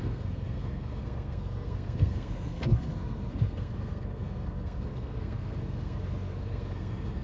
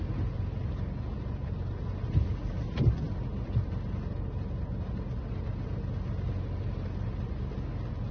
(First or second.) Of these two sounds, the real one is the second